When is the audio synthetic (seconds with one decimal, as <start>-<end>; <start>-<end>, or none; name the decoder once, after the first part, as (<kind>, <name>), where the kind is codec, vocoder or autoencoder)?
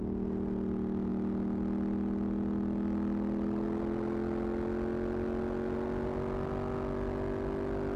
none